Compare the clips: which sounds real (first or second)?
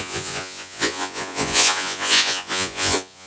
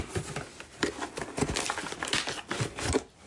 second